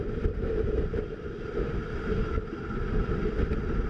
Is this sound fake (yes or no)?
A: yes